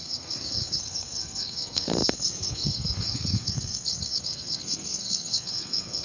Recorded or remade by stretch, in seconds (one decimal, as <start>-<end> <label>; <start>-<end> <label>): 0.0-6.0 remade